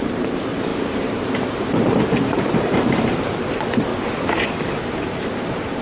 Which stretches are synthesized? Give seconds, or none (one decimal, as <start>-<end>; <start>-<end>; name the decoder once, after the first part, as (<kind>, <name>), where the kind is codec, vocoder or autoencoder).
0.0-3.9 (vocoder, BigVGAN v2); 5.0-5.8